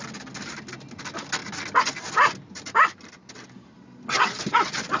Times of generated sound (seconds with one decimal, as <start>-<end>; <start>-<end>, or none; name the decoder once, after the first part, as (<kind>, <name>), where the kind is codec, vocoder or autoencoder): none